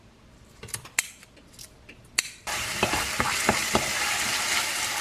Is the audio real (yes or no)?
no